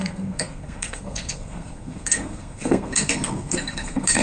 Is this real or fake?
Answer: fake